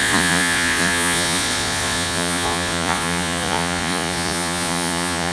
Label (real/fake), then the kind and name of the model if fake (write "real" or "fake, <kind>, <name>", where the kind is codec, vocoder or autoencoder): fake, vocoder, Vocos